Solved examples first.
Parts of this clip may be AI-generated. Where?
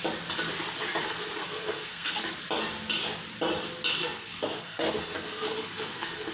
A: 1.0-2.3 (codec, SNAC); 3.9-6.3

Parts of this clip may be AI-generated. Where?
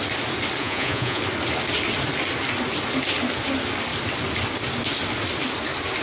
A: 0.6-1.2 (vocoder, Vocos)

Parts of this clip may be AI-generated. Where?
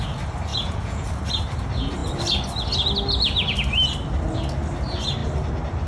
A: 0.5-1.1 (vocoder, Vocos)